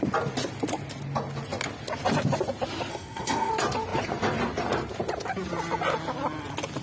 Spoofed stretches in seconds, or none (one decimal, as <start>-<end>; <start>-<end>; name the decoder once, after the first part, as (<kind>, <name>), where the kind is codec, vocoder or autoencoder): 2.9-3.5 (codec, SNAC)